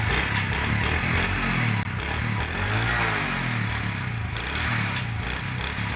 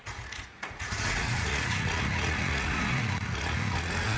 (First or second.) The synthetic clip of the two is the second